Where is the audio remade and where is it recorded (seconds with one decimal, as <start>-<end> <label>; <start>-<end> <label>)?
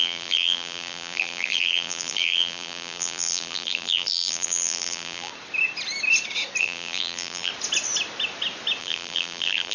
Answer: 0.0-5.3 remade; 5.3-6.6 recorded; 6.6-7.5 remade; 7.5-8.8 recorded; 8.8-9.7 remade